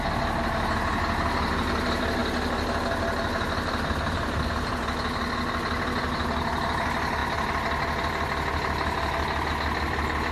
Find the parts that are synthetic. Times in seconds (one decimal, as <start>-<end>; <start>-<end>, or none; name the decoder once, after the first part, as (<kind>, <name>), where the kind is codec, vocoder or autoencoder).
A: none